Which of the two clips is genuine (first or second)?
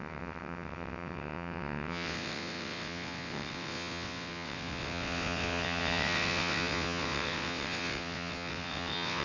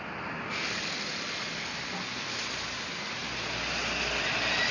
second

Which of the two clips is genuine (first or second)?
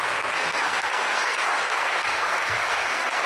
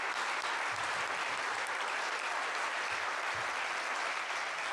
second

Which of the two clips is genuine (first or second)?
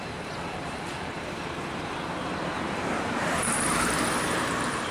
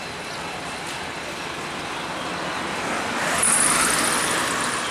second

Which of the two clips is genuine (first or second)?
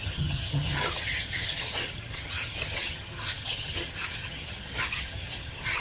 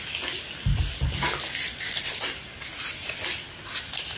second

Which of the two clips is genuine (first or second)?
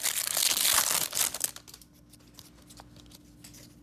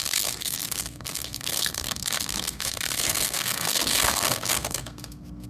first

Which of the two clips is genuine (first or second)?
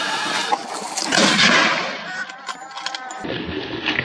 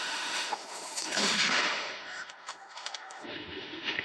first